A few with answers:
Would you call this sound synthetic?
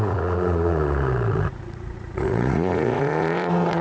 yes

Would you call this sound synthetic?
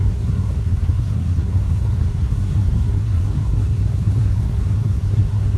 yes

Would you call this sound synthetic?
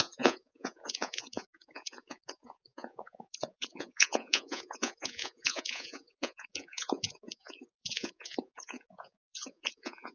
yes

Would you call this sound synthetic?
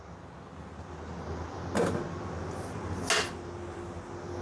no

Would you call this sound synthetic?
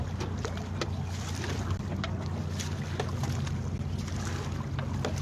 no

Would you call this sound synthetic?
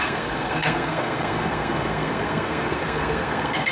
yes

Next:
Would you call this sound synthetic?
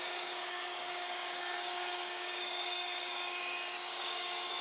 yes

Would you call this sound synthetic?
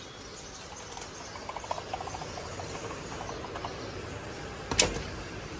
no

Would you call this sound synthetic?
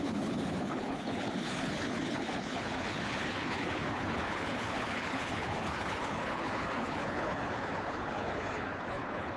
yes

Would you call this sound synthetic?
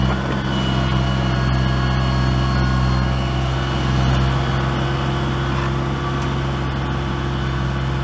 no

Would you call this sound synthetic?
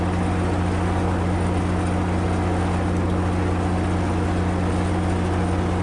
no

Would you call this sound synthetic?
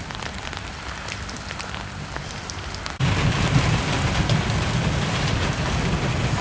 no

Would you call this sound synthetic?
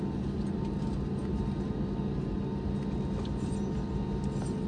no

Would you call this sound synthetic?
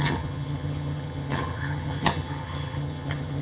yes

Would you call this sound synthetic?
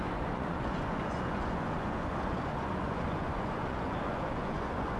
yes